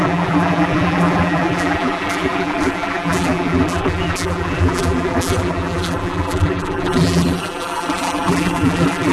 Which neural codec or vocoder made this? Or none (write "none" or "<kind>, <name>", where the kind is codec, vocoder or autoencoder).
vocoder, BigVGAN v2